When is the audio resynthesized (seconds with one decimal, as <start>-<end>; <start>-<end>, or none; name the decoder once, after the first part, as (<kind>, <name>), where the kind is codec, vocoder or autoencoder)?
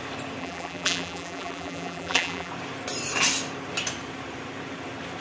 0.4-2.5 (vocoder, BigVGAN v2)